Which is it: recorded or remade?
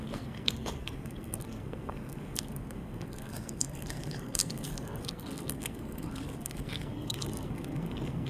remade